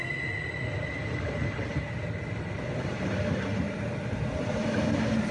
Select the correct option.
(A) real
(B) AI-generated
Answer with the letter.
A